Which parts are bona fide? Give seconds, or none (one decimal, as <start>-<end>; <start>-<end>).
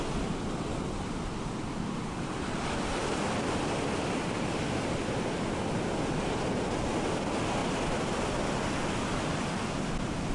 0.0-10.3